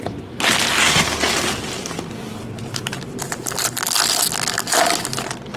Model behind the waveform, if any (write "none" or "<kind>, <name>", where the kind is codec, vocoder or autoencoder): none